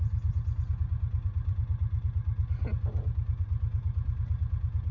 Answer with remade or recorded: recorded